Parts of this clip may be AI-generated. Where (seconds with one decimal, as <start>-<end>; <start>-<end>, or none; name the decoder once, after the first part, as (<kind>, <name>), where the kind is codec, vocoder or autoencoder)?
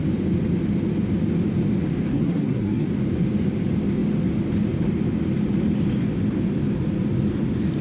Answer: 2.1-2.9 (codec, SNAC)